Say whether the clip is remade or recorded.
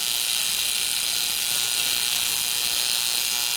remade